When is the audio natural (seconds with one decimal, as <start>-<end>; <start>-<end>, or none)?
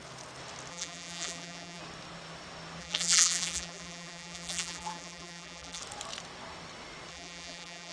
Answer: 0.0-0.7; 1.8-2.8; 5.8-7.1